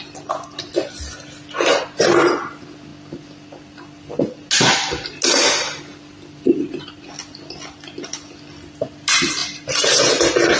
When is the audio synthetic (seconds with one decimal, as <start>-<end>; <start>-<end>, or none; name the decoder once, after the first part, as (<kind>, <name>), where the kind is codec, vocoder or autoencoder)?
none